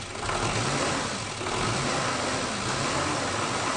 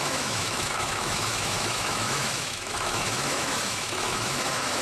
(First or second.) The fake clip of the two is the second